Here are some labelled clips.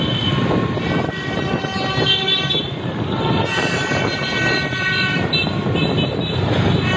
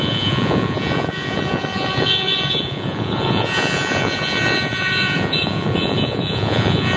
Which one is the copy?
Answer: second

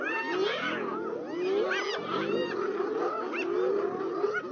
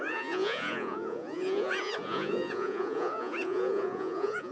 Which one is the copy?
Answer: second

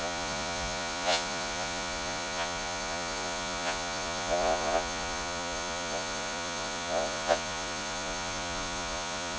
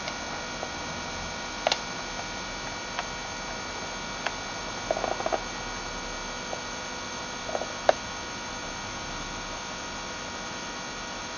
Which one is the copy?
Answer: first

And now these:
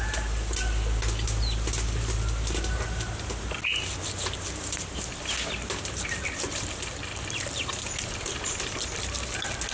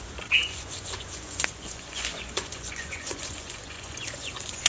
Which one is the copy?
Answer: second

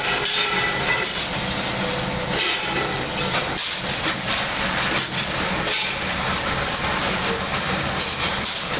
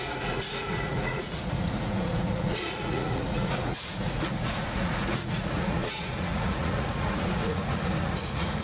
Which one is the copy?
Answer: second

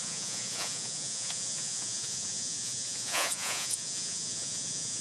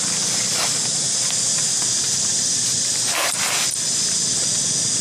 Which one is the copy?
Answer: first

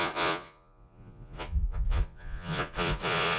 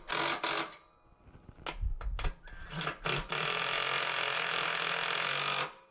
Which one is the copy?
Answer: first